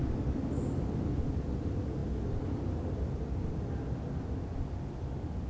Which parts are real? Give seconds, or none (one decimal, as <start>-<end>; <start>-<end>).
0.0-5.5